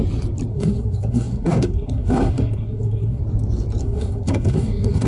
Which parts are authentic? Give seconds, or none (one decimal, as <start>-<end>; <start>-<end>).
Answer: 0.0-0.5; 3.2-3.8